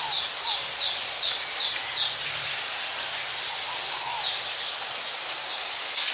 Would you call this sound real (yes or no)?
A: yes